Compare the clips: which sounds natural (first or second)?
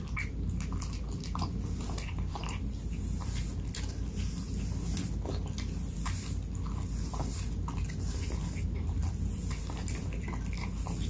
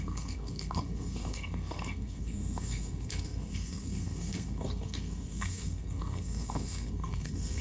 first